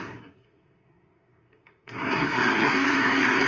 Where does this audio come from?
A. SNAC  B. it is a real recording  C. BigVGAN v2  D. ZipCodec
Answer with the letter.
A